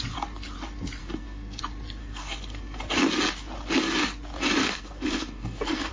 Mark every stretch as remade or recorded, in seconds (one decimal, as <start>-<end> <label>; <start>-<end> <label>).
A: 0.0-1.0 recorded; 1.0-1.6 remade; 1.6-2.0 recorded; 2.0-2.8 remade; 2.8-4.6 recorded; 4.6-5.9 remade